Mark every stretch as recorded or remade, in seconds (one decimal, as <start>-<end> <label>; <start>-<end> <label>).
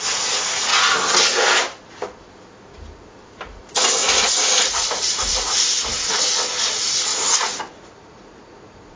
0.0-0.7 remade; 0.7-3.6 recorded; 3.6-4.0 remade; 4.0-4.8 recorded; 4.8-5.9 remade; 5.9-6.6 recorded; 6.6-9.0 remade